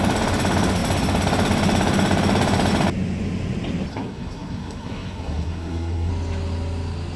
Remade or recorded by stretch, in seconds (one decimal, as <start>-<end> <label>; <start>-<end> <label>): 0.0-3.9 recorded; 3.9-6.1 remade; 6.1-7.2 recorded